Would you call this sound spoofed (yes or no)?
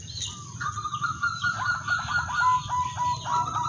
no